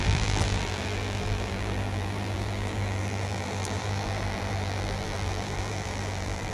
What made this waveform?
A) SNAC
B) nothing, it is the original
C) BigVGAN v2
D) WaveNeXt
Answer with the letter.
C